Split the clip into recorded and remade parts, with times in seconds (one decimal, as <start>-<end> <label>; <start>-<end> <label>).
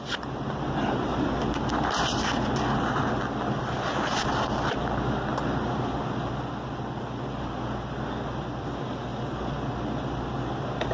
0.0-10.9 recorded